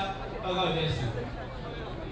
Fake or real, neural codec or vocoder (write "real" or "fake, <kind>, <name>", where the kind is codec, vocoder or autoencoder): real